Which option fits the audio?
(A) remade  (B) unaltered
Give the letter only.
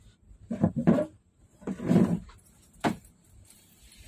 A